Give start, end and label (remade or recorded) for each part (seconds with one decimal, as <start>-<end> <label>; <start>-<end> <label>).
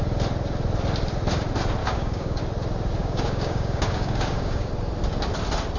0.0-1.8 recorded; 1.8-2.4 remade; 2.4-3.0 recorded; 3.0-4.7 remade; 4.7-5.8 recorded